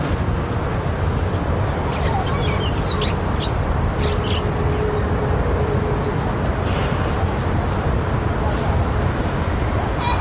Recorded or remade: recorded